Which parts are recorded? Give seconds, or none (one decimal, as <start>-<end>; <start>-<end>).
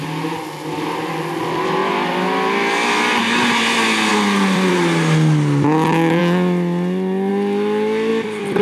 0.0-1.8; 3.2-4.1; 4.7-8.1